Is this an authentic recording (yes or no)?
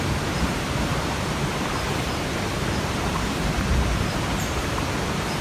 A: no